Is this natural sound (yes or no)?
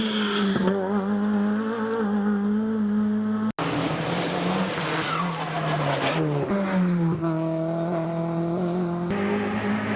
yes